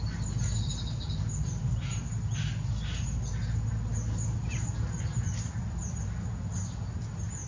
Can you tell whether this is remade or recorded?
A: recorded